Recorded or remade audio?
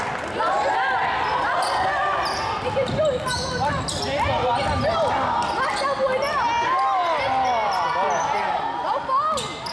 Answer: recorded